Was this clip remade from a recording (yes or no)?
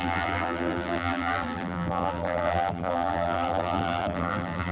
yes